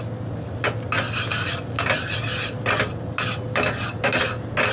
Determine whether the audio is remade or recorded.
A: recorded